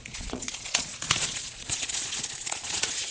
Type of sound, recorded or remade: remade